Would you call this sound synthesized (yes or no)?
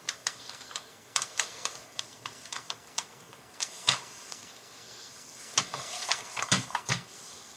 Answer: yes